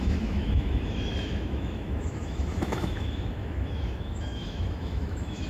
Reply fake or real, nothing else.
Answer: fake